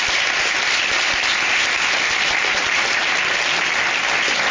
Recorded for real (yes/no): yes